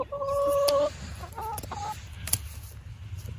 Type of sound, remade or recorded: recorded